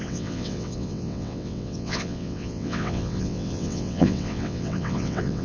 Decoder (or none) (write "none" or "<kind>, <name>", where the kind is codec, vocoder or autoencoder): vocoder, WaveNeXt